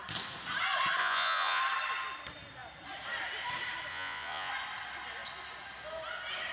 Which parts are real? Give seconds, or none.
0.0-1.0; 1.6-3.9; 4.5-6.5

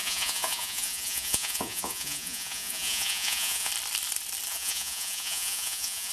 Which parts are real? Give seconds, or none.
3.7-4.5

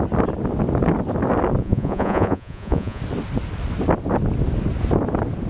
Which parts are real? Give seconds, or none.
0.0-1.6; 3.0-5.5